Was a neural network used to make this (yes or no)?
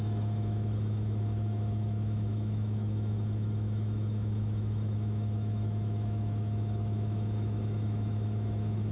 yes